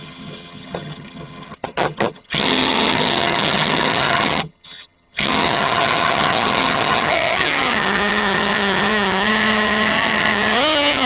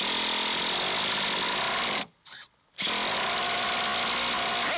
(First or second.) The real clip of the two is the second